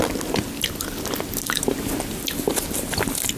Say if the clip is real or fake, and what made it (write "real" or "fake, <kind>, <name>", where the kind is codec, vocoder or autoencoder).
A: real